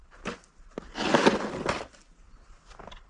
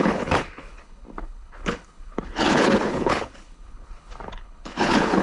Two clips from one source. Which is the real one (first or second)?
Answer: first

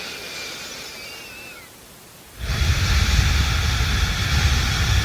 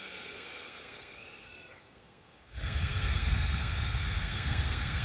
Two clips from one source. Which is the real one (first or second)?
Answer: first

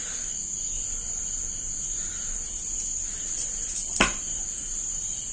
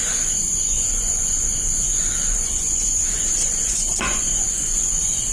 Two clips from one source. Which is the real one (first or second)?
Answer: first